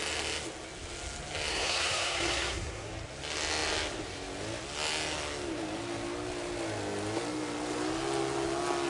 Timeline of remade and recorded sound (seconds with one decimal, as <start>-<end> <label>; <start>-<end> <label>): 0.0-1.5 recorded; 1.5-2.9 remade; 2.9-8.9 recorded